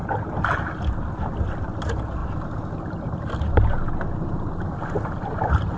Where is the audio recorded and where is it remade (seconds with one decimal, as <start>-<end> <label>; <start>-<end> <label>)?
0.0-5.8 recorded